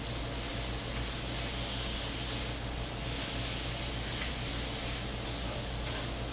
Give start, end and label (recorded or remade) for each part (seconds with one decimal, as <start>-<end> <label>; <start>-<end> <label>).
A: 0.0-6.3 recorded